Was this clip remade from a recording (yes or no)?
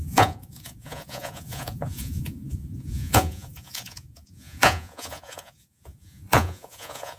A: yes